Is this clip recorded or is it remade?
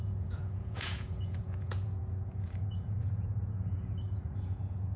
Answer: remade